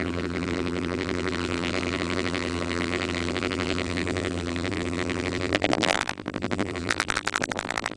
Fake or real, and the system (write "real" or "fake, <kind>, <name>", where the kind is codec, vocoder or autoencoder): fake, vocoder, BigVGAN v2